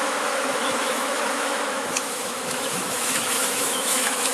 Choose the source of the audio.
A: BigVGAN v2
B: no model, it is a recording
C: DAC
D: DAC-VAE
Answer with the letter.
D